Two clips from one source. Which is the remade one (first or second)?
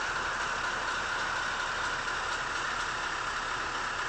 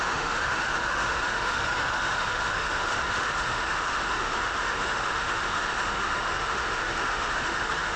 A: second